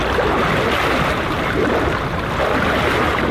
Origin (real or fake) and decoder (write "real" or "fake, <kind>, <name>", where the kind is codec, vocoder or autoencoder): real